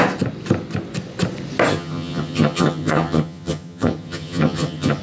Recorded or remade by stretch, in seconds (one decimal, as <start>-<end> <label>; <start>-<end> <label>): 0.0-1.7 recorded; 1.7-5.0 remade